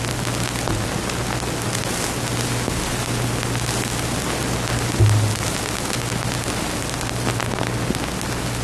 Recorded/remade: recorded